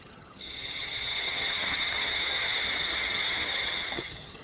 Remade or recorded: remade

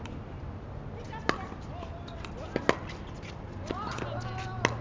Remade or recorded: recorded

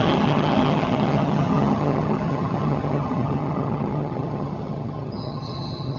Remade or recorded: remade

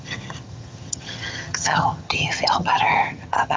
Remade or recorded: remade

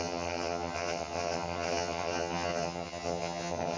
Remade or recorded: remade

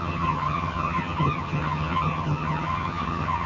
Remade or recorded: remade